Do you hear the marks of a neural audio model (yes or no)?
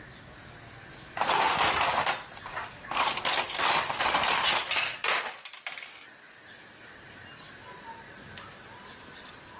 no